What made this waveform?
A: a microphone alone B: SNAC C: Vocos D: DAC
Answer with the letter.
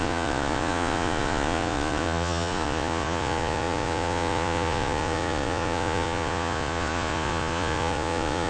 C